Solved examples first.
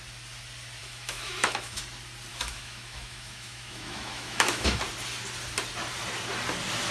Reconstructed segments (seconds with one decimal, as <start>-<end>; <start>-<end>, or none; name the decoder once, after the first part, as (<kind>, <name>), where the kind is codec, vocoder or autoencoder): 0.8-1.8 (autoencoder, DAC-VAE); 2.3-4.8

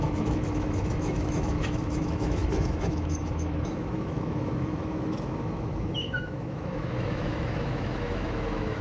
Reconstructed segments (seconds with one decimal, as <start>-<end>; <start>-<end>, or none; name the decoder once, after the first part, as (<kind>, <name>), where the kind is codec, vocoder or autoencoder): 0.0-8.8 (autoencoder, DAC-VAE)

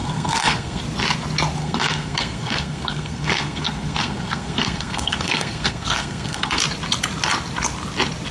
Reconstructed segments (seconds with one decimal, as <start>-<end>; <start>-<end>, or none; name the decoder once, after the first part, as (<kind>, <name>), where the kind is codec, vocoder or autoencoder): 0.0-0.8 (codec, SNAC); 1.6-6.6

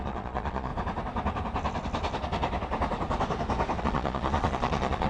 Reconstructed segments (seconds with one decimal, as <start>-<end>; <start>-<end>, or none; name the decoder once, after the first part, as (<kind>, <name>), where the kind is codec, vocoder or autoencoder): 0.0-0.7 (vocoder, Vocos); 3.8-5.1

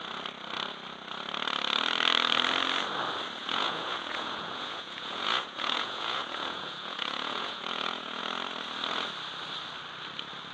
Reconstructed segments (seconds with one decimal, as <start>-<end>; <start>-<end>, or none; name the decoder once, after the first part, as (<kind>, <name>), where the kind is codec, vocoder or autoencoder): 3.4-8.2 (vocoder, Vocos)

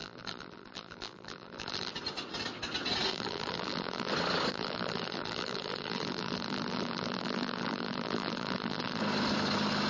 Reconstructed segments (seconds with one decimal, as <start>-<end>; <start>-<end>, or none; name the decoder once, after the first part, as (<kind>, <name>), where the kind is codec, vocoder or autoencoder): 0.0-1.9 (vocoder, BigVGAN v2); 3.1-4.1; 4.5-9.0

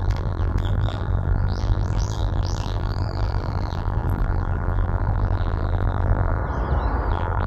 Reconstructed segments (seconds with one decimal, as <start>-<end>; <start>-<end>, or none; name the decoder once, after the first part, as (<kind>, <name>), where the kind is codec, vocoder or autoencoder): 0.0-6.4 (vocoder, BigVGAN v2); 7.1-7.5